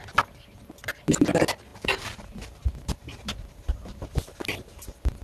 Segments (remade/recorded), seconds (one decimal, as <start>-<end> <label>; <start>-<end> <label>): 0.0-1.7 recorded; 1.7-4.1 remade; 4.1-5.2 recorded